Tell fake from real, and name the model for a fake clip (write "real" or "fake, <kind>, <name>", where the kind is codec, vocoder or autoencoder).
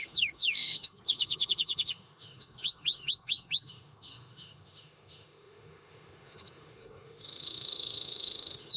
fake, autoencoder, DAC-VAE